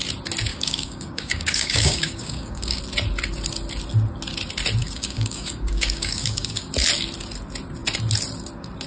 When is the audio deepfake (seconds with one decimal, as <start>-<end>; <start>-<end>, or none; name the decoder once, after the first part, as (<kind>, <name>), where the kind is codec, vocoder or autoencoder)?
0.5-2.8 (codec, DAC); 4.8-6.7